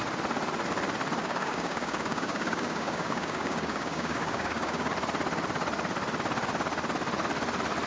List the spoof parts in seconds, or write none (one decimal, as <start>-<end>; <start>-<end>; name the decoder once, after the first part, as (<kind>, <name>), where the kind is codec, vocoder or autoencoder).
1.2-4.9 (codec, DAC)